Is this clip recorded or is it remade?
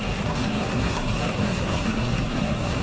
remade